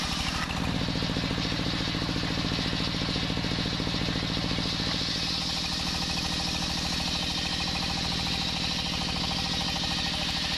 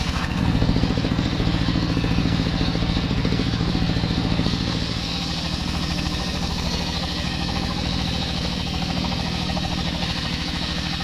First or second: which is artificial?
second